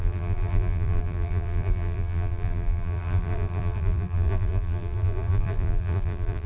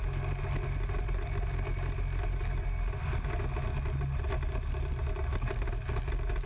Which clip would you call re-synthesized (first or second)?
first